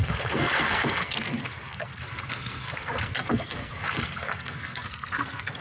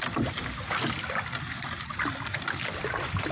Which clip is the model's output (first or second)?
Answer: first